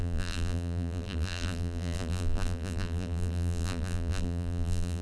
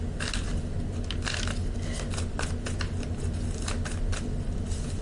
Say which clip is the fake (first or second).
first